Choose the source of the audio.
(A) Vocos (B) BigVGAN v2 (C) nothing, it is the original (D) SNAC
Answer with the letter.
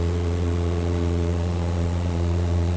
A